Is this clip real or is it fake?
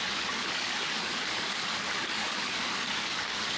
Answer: fake